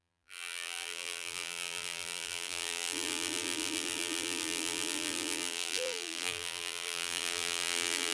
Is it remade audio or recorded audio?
remade